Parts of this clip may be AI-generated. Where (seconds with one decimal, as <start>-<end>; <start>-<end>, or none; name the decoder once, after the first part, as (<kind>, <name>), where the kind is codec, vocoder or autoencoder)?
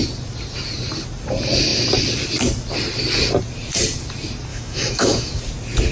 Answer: 4.5-5.4 (autoencoder, DAC-VAE)